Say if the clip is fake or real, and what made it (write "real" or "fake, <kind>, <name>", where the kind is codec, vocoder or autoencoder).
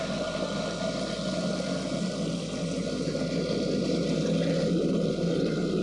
real